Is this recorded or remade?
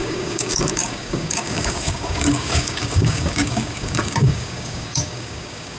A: remade